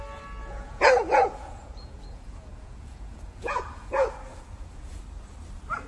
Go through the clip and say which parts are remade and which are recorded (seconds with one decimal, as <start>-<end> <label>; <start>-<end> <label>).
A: 0.0-0.4 recorded; 0.4-3.9 remade; 3.9-4.3 recorded; 4.3-5.0 remade; 5.0-5.9 recorded